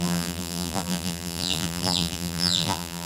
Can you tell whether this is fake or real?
fake